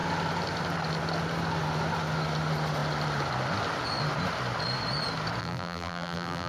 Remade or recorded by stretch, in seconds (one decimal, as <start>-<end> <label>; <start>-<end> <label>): 0.0-5.4 recorded; 5.4-6.5 remade

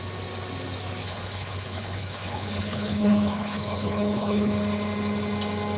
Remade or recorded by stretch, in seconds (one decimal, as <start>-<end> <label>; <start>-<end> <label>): 0.0-1.0 recorded; 1.0-4.5 remade; 4.5-5.8 recorded

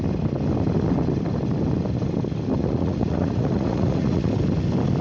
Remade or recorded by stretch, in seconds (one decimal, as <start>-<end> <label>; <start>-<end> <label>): 0.0-2.6 recorded; 2.6-4.3 remade; 4.3-5.0 recorded

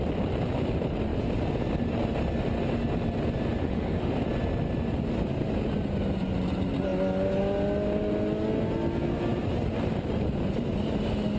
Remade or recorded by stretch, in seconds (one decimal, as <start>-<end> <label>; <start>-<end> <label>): 0.0-3.6 recorded; 3.6-4.1 remade; 4.1-11.4 recorded

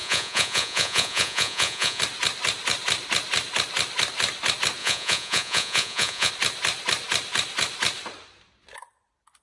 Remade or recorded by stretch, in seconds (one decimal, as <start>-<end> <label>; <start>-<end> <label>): 0.0-2.0 remade; 2.0-4.8 recorded; 4.8-6.3 remade; 6.3-9.4 recorded

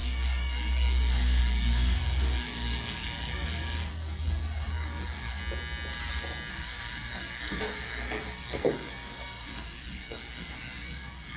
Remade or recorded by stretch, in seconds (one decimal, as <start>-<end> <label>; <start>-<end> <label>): 0.0-5.4 remade; 5.4-6.5 recorded; 6.5-11.4 remade

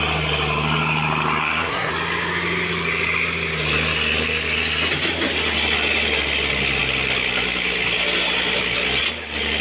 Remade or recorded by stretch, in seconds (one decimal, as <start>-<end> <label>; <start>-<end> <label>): 0.0-1.4 recorded; 1.4-1.9 remade; 1.9-9.6 recorded

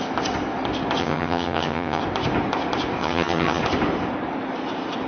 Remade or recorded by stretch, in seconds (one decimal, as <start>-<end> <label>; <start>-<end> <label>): 0.0-1.0 recorded; 1.0-2.0 remade; 2.0-3.0 recorded; 3.0-3.6 remade; 3.6-5.1 recorded